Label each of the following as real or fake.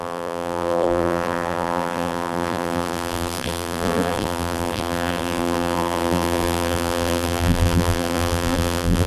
fake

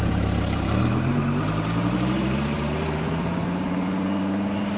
fake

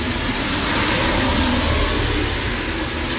fake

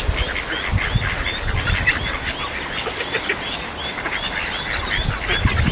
real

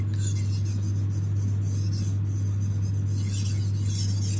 real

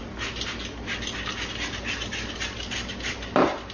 real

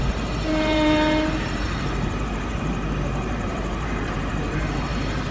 fake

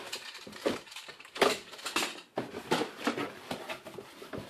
real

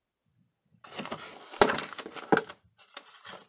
real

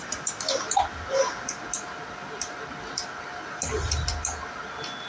real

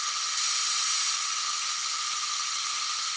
real